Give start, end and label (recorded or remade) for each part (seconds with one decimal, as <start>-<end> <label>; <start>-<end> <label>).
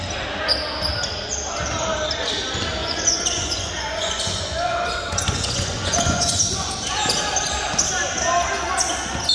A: 0.0-2.8 recorded; 2.8-6.7 remade; 6.7-9.3 recorded